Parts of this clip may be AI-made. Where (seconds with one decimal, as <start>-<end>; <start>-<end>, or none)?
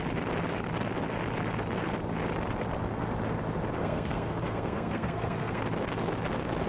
3.8-5.6